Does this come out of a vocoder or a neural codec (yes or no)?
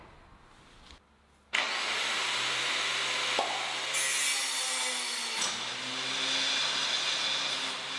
no